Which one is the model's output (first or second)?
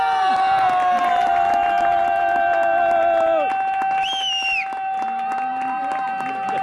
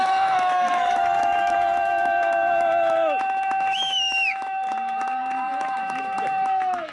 second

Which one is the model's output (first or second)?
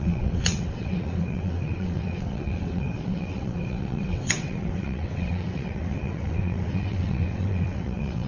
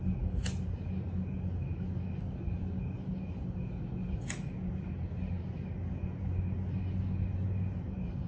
first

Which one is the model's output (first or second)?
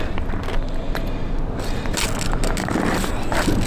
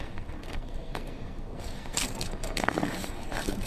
second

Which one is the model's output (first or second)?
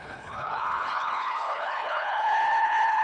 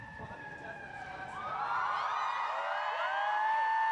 first